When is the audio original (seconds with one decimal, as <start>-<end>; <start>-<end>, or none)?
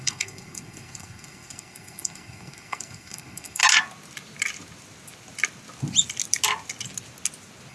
3.6-7.7